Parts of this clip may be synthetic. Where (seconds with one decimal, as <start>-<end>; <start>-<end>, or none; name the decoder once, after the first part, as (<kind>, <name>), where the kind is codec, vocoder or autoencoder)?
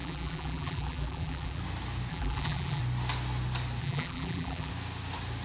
0.0-1.6 (vocoder, BigVGAN v2); 2.1-2.8; 3.8-4.7